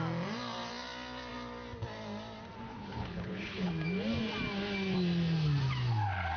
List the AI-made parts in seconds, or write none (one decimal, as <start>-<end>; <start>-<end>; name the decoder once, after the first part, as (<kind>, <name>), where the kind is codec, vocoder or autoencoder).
2.7-3.7 (codec, HILCodec)